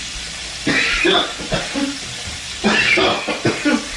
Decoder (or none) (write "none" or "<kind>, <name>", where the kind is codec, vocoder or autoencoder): none